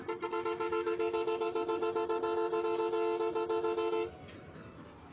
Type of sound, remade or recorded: recorded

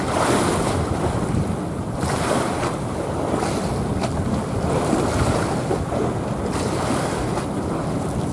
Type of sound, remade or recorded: recorded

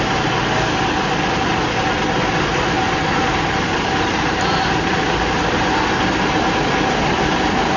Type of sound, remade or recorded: recorded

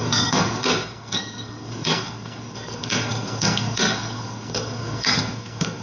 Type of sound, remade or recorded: remade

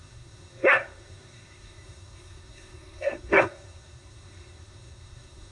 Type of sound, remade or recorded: remade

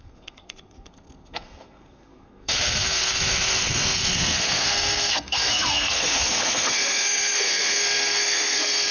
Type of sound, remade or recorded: remade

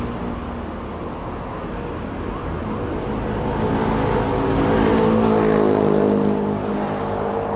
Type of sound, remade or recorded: recorded